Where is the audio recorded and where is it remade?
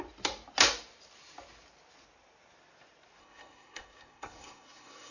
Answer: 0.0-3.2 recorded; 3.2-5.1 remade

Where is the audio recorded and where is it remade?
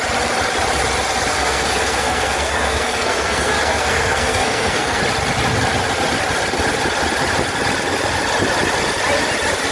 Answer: 0.0-1.3 recorded; 1.3-5.0 remade; 5.0-9.7 recorded